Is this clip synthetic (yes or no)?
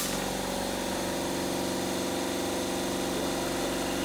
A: no